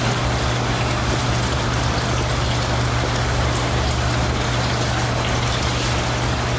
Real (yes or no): yes